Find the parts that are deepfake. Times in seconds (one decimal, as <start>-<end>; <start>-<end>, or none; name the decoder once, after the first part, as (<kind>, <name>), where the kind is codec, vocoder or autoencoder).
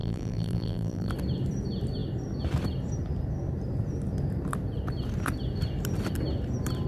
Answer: 0.0-1.1 (vocoder, BigVGAN v2)